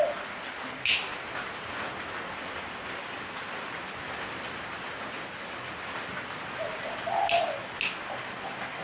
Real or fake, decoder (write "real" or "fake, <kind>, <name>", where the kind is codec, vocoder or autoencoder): real